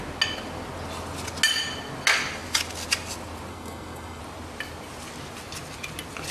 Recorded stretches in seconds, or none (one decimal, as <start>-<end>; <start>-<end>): 0.0-3.5; 4.2-6.3